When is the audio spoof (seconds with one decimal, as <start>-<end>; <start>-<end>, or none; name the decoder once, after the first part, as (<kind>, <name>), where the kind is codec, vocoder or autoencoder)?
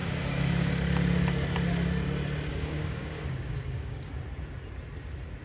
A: 0.0-0.7 (codec, DAC); 2.5-4.1